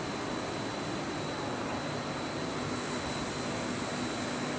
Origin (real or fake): real